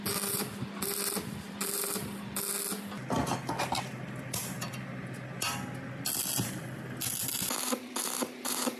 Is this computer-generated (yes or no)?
no